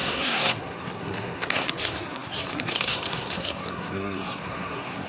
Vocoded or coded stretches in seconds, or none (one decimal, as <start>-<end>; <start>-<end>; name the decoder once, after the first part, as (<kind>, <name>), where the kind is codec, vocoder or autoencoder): 0.0-5.1 (codec, SNAC)